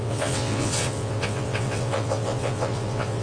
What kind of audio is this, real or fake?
fake